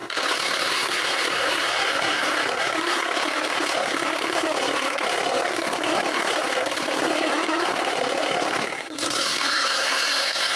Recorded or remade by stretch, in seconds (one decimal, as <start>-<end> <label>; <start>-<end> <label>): 0.0-10.6 remade